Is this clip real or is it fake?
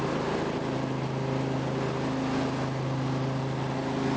real